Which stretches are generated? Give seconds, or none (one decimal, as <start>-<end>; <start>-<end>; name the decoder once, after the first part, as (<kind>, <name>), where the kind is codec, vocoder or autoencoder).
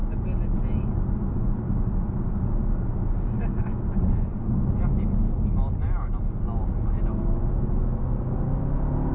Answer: none